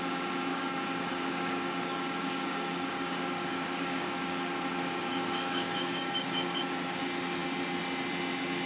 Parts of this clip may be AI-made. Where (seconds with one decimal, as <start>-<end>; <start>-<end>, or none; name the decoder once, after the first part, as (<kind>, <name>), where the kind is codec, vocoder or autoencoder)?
0.5-4.5 (codec, DAC); 5.1-6.6